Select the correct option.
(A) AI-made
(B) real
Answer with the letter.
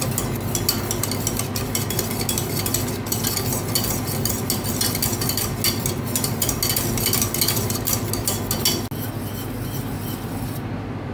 B